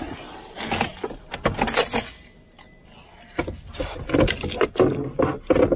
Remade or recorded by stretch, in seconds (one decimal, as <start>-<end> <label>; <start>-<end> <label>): 0.0-5.8 recorded

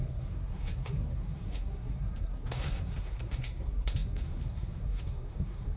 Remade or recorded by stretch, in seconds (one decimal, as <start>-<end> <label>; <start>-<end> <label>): 0.0-5.8 remade

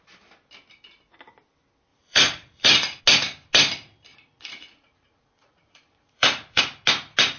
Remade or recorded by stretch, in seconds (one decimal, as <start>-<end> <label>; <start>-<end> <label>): 0.0-1.9 recorded; 1.9-3.0 remade; 3.0-4.1 recorded; 4.1-6.6 remade; 6.6-7.4 recorded

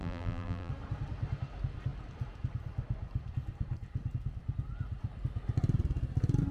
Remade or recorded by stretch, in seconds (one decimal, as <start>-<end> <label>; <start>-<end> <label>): 0.0-0.7 remade; 0.7-6.5 recorded

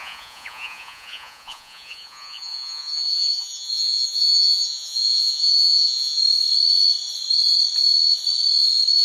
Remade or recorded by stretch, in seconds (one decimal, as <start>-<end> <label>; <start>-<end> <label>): 0.0-6.2 remade; 6.2-9.0 recorded

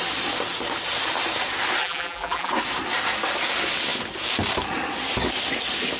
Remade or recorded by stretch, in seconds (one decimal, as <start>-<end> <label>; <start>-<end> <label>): 0.0-1.8 recorded; 1.8-2.5 remade; 2.5-6.0 recorded

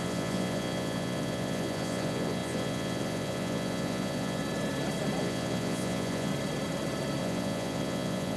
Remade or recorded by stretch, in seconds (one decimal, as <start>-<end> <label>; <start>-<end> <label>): 0.0-4.4 remade; 4.4-5.2 recorded; 5.2-6.3 remade; 6.3-7.2 recorded; 7.2-8.4 remade